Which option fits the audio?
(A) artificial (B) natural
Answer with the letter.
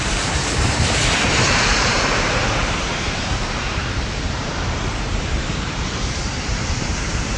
A